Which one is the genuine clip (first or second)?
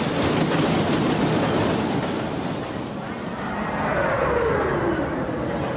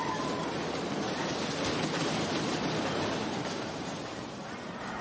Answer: first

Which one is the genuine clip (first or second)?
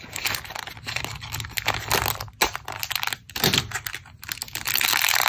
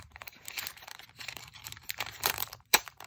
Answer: first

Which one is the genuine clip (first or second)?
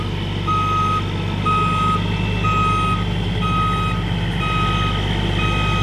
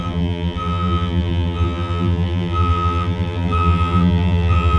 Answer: first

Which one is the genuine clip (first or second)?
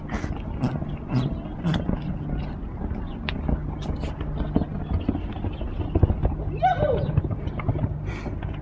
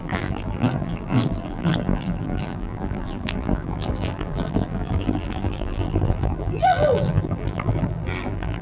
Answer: first